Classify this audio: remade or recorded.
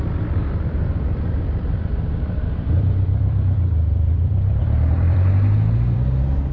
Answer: remade